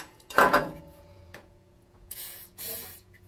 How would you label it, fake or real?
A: fake